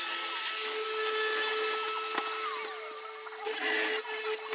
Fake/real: real